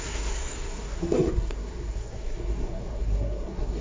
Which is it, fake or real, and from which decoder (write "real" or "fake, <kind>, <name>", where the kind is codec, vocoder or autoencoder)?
fake, codec, SNAC